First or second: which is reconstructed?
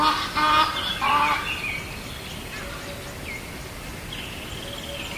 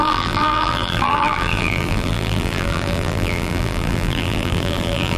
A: second